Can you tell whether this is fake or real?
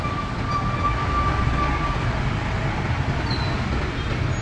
real